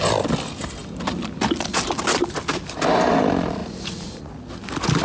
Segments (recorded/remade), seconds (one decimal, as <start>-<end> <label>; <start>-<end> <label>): 0.0-3.6 recorded; 3.6-4.3 remade; 4.3-5.0 recorded